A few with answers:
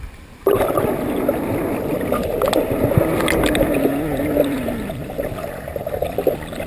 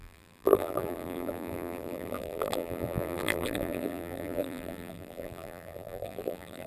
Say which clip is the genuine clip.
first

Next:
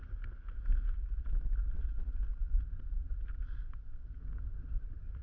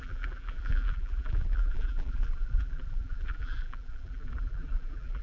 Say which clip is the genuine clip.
first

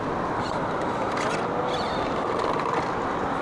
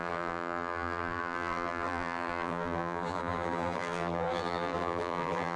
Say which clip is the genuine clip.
first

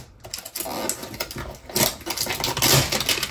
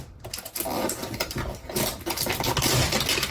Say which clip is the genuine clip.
first